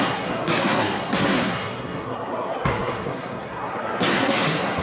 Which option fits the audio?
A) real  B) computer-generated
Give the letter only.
B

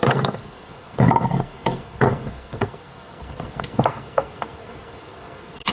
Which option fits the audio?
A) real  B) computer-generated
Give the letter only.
B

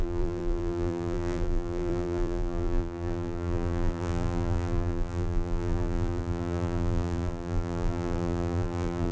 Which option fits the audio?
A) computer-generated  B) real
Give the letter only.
A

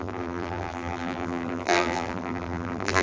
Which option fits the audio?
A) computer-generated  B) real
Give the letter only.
A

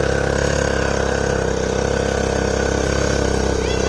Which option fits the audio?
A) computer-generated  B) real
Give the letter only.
B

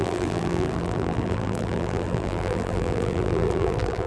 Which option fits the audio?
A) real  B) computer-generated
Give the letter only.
B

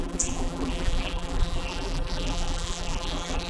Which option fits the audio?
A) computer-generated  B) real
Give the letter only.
A